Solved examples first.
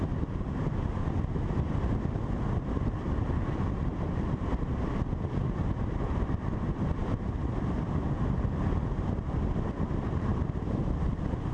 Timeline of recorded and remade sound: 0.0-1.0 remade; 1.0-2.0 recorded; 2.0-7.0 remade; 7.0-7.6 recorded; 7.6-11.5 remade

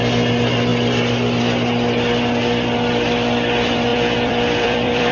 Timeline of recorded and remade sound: 0.0-3.9 recorded; 3.9-5.1 remade

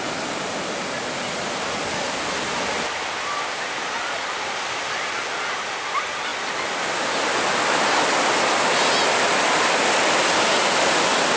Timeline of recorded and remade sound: 0.0-11.4 recorded

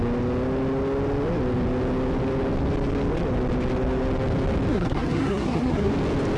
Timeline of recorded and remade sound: 0.0-4.7 recorded; 4.7-5.9 remade; 5.9-6.4 recorded

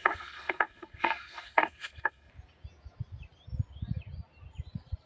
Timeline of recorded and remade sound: 0.0-2.3 remade; 2.3-5.1 recorded

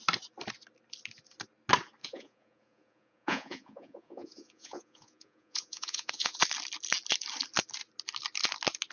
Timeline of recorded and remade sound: 0.0-2.0 recorded; 2.0-6.4 remade; 6.4-8.9 recorded

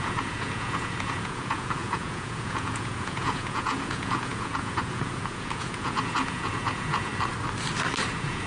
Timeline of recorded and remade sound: 0.0-7.1 remade; 7.1-8.1 recorded; 8.1-8.5 remade